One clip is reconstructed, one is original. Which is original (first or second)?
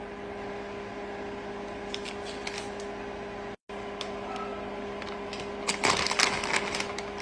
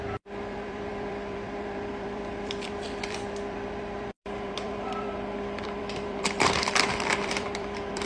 first